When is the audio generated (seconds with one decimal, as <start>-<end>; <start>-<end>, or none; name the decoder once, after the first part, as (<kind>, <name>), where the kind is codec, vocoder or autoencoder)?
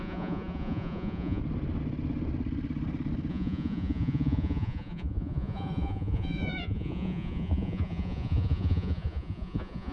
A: 0.0-1.4 (vocoder, Vocos); 3.3-9.9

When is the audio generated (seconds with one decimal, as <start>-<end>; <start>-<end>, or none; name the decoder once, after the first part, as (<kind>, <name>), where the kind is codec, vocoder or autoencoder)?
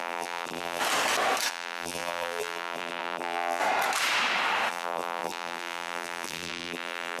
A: 0.0-0.8 (vocoder, BigVGAN v2); 1.5-3.6; 4.7-7.2